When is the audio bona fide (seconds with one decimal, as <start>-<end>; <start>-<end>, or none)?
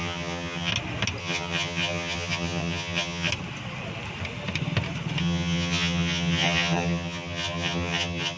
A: 0.7-1.2; 3.3-5.2